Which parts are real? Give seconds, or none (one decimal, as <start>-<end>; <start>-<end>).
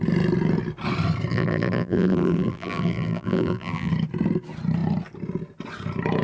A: 0.0-1.3; 3.9-6.2